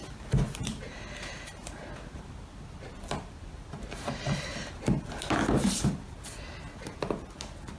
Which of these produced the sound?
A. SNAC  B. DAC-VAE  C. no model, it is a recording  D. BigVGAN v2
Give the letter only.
C